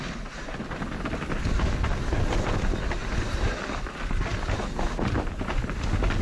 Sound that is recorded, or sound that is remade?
recorded